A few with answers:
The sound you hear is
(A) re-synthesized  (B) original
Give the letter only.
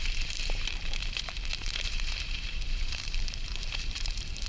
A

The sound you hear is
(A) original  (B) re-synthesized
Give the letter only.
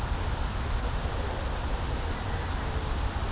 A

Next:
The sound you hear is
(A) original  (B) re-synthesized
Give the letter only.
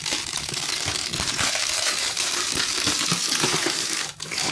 B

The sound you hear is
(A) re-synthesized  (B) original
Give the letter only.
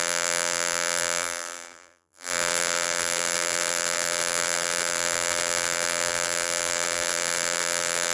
A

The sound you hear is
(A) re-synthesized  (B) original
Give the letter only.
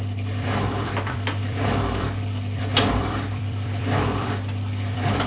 A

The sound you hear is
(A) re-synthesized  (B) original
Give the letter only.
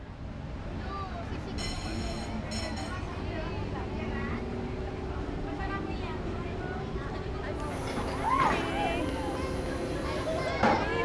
B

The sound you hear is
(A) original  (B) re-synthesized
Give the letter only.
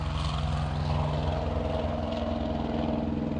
A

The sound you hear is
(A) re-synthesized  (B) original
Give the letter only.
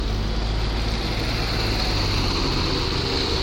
B